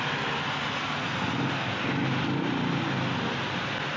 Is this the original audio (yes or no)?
yes